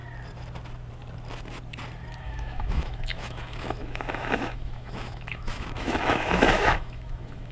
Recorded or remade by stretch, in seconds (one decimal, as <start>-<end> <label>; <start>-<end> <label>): 0.0-2.2 recorded; 2.2-7.5 remade

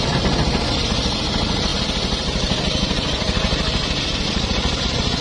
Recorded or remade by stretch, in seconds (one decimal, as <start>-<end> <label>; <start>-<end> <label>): 0.0-5.2 recorded

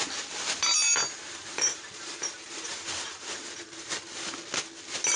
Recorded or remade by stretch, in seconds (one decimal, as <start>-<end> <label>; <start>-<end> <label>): 0.0-1.2 recorded; 1.2-4.3 remade; 4.3-5.2 recorded

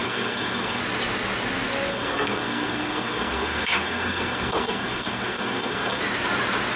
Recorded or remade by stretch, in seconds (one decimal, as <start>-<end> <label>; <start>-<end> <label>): 0.0-0.8 remade; 0.8-1.9 recorded; 1.9-6.0 remade; 6.0-6.8 recorded

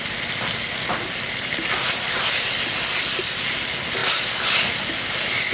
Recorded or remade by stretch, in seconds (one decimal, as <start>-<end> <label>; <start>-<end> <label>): 0.0-5.5 recorded

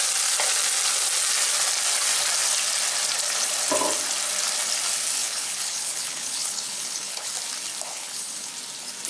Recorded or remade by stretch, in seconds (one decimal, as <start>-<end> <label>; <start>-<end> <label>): 0.0-5.2 recorded; 5.2-7.3 remade; 7.3-7.9 recorded; 7.9-8.5 remade; 8.5-9.1 recorded

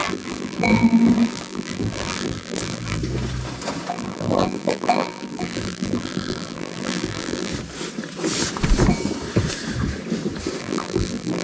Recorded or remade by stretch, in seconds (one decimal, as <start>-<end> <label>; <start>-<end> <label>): 0.0-3.0 remade; 3.0-3.9 recorded; 3.9-7.5 remade; 7.5-10.6 recorded; 10.6-11.4 remade

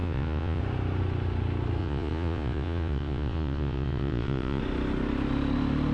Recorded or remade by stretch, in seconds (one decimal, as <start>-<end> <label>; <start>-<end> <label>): 0.0-0.6 remade; 0.6-1.8 recorded; 1.8-4.6 remade; 4.6-5.9 recorded